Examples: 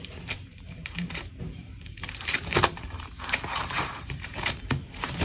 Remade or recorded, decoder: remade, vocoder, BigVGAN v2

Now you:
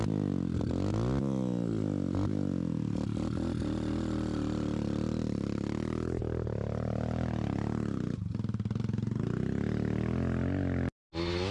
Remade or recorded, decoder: recorded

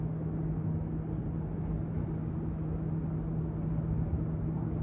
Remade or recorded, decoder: recorded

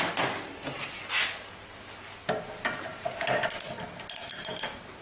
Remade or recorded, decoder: recorded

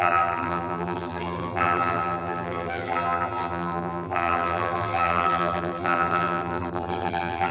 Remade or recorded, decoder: remade, vocoder, BigVGAN v2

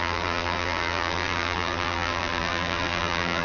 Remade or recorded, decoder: remade, vocoder, BigVGAN v2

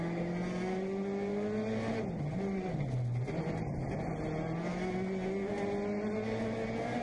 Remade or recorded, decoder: recorded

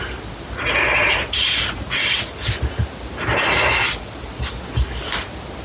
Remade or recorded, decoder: recorded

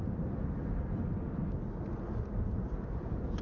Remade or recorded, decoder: recorded